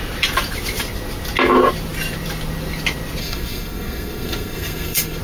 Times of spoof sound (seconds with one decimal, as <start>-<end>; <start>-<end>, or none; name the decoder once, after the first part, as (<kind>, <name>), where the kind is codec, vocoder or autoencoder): 3.2-5.2 (codec, SNAC)